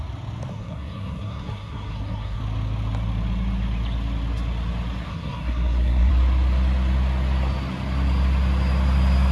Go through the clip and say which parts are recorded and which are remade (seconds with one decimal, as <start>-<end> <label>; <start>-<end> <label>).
0.0-0.5 recorded; 0.5-2.4 remade; 2.4-5.1 recorded; 5.1-6.1 remade; 6.1-9.3 recorded